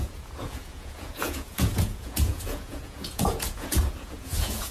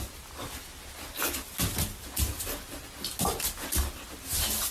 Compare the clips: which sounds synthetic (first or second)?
first